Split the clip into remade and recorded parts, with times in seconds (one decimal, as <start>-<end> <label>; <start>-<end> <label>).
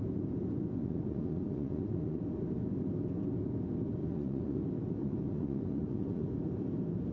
0.0-0.8 recorded; 0.8-2.2 remade; 2.2-4.0 recorded; 4.0-4.6 remade; 4.6-5.0 recorded; 5.0-6.3 remade; 6.3-7.1 recorded